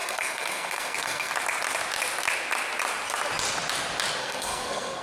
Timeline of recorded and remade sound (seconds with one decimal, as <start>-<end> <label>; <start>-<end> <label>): 0.0-1.3 remade; 1.3-4.2 recorded; 4.2-5.0 remade